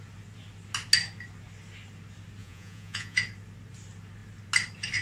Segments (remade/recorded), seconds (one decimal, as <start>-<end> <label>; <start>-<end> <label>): 0.0-2.4 recorded; 2.4-3.2 remade; 3.2-5.0 recorded